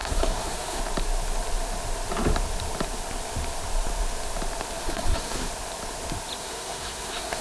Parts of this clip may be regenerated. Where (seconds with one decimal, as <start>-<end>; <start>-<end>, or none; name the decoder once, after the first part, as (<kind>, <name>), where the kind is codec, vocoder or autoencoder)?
0.0-0.8 (codec, SNAC); 4.8-5.5; 6.4-7.4